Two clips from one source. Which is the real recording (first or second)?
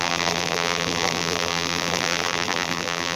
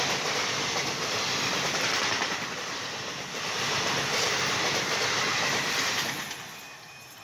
second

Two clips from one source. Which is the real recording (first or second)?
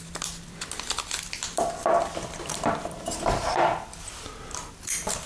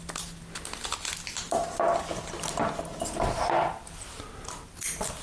second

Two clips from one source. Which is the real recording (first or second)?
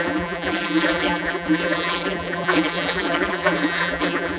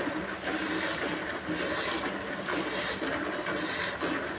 second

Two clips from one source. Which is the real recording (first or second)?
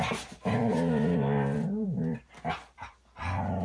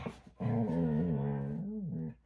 second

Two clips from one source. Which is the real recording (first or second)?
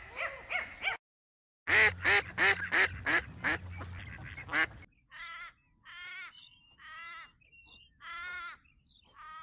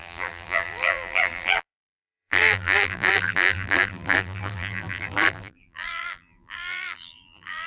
first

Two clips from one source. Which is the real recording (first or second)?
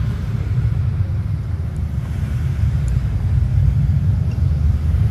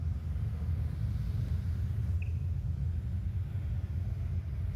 second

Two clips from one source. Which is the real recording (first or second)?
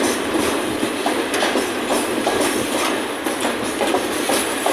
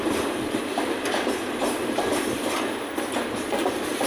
first